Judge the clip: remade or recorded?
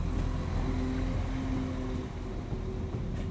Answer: recorded